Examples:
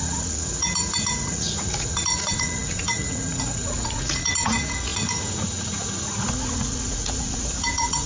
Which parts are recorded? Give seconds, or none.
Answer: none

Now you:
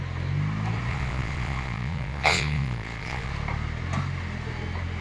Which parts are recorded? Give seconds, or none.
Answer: 0.0-0.9; 3.3-5.0

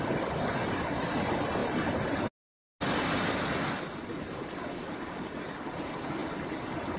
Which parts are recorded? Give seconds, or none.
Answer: 0.0-7.0

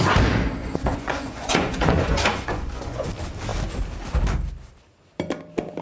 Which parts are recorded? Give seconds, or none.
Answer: 0.0-0.6; 3.1-5.8

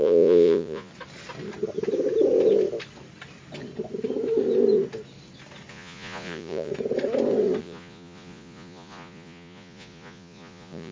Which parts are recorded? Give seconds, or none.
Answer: 0.9-5.7; 6.7-7.6

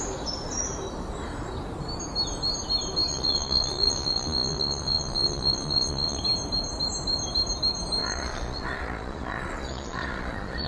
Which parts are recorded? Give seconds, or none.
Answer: 0.0-3.1; 6.2-8.0

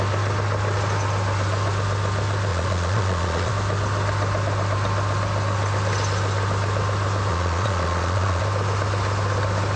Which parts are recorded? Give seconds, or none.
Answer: 0.0-2.5; 3.5-7.3; 8.4-9.8

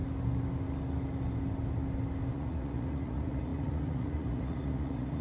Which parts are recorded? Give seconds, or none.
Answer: 0.0-2.3